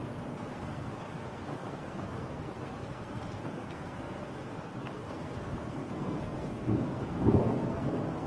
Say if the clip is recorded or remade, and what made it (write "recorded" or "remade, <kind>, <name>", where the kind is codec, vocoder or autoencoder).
remade, codec, SNAC